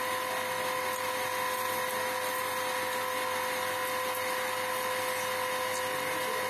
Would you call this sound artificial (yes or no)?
no